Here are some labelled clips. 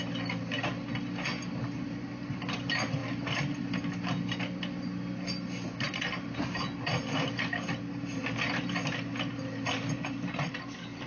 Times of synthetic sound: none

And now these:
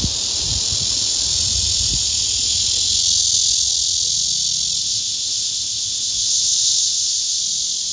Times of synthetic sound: 4.8-7.4 (codec, ZipCodec)